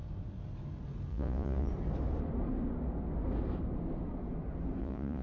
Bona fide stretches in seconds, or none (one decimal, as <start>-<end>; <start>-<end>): 0.0-1.1; 1.7-4.8

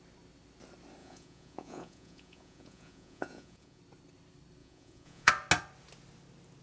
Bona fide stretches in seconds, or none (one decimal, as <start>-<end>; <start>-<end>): 0.0-1.0; 3.8-4.6; 5.3-6.6

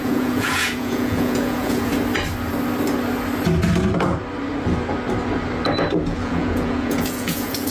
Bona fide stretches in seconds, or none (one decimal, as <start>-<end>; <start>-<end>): 1.9-6.1